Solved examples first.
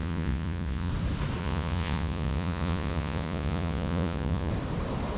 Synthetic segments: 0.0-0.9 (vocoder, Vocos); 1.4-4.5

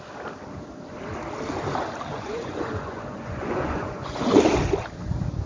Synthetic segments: 2.1-4.4 (vocoder, Vocos)

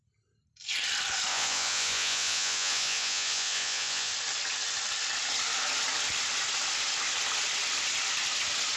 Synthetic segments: 1.3-4.1 (vocoder, Vocos)

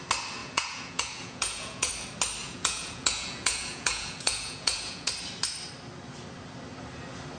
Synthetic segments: 0.4-1.9 (vocoder, Vocos); 2.4-5.1

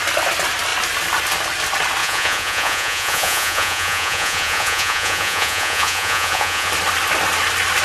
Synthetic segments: 2.0-6.7 (vocoder, Vocos)